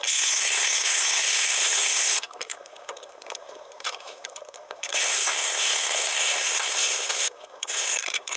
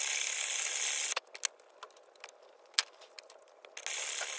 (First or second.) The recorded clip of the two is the second